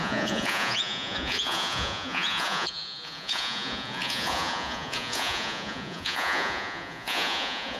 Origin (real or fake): fake